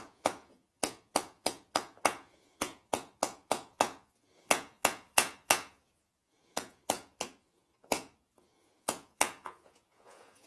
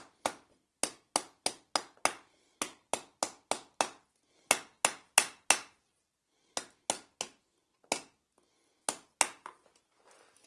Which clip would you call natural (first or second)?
second